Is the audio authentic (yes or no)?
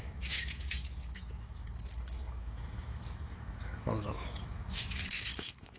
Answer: no